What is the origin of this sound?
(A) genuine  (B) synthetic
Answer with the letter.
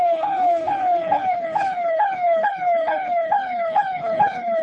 B